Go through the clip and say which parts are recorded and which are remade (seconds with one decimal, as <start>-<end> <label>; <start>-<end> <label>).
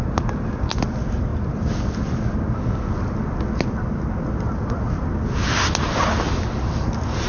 0.0-7.3 recorded